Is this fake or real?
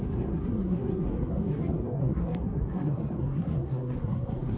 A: fake